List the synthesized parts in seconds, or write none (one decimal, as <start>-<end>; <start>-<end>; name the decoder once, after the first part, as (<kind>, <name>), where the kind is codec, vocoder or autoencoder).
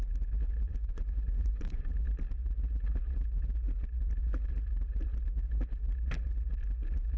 0.7-1.9 (vocoder, Vocos)